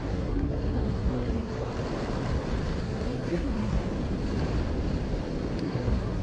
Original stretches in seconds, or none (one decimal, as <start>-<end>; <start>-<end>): 1.7-2.8; 3.8-5.6